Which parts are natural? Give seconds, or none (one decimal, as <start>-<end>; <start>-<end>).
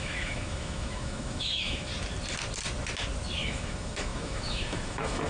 1.9-3.4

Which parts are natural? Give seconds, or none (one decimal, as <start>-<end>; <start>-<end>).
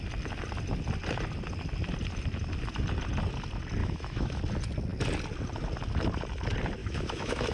0.0-3.8; 4.4-6.8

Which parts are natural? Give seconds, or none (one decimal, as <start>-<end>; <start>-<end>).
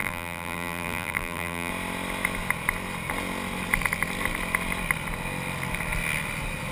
1.7-6.7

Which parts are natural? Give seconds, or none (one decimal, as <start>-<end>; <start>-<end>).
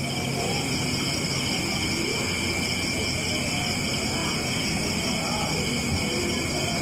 0.0-4.2; 4.8-6.8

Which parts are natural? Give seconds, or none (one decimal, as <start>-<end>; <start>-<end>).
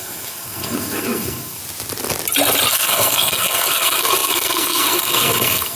1.6-2.7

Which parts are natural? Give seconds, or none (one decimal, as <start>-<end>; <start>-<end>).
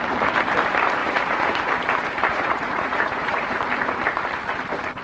0.0-1.0; 1.7-2.3; 3.6-5.0